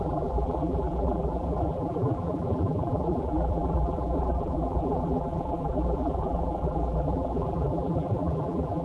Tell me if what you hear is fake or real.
fake